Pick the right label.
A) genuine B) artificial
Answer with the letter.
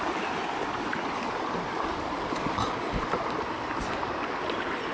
A